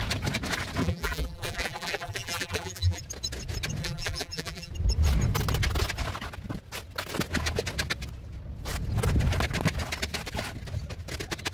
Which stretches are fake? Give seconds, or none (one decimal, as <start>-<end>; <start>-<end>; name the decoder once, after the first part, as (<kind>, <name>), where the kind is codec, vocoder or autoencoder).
0.8-3.0 (vocoder, BigVGAN v2); 3.8-4.7